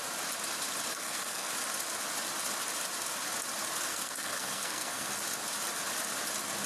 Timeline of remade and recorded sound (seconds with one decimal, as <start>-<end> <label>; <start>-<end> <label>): 0.0-0.9 recorded; 0.9-1.5 remade; 1.5-3.9 recorded; 3.9-5.1 remade; 5.1-6.7 recorded